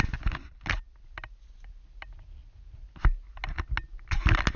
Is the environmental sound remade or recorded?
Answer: recorded